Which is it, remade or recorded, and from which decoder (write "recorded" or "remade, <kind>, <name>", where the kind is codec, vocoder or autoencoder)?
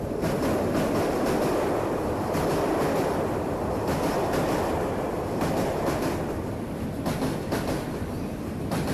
recorded